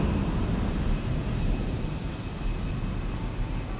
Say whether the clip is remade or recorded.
recorded